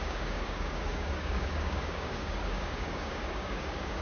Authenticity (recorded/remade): remade